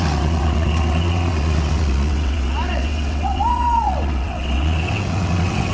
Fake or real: fake